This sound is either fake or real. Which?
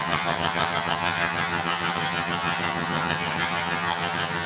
fake